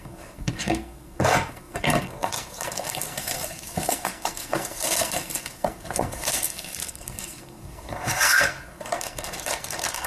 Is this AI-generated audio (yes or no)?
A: yes